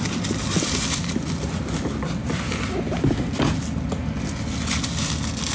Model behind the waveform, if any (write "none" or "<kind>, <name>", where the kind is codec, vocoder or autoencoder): none